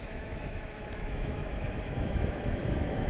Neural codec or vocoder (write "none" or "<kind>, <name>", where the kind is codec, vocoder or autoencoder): autoencoder, DAC-VAE